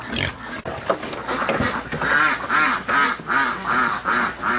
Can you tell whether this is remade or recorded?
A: recorded